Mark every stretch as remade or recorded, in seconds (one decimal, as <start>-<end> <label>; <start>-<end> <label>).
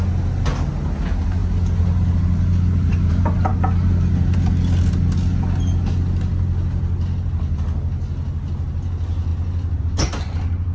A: 0.0-10.7 recorded